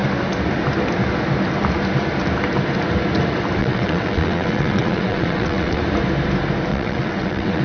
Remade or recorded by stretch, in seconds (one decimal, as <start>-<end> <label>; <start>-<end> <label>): 0.0-3.6 recorded; 3.6-5.8 remade; 5.8-6.7 recorded; 6.7-7.6 remade